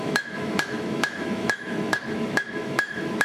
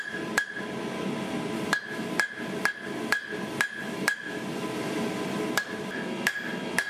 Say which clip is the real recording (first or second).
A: second